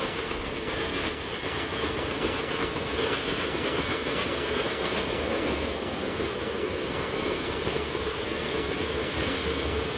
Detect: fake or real fake